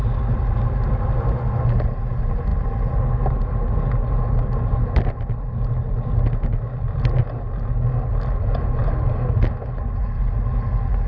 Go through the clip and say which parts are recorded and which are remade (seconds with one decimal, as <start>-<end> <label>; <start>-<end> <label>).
0.0-11.1 recorded